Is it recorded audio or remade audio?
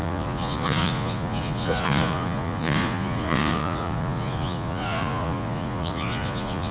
remade